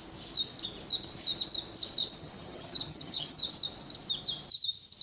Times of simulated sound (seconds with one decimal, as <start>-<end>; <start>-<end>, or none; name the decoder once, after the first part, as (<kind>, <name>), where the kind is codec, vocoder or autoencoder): 2.2-3.5 (vocoder, HiFi-GAN)